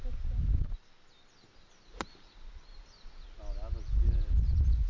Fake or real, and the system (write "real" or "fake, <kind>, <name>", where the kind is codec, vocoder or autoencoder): real